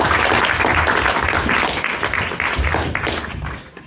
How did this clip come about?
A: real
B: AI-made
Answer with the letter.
A